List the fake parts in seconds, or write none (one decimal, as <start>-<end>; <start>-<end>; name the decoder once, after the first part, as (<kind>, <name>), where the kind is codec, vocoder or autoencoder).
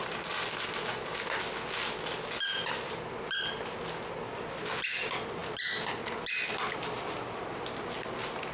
none